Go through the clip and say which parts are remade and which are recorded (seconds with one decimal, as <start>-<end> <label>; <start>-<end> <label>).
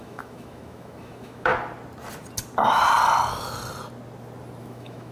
0.0-1.5 remade; 1.5-4.6 recorded; 4.6-5.1 remade